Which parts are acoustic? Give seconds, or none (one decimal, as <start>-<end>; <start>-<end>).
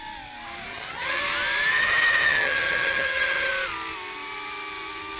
0.0-0.7; 1.2-1.7; 3.5-5.2